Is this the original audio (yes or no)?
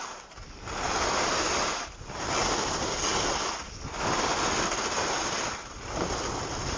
yes